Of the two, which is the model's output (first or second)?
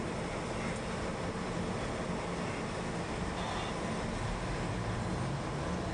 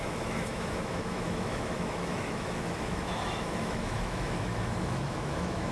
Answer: second